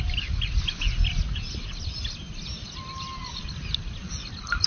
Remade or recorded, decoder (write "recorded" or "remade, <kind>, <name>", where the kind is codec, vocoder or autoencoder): recorded